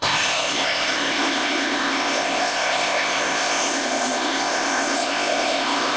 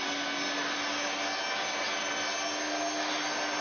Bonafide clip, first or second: second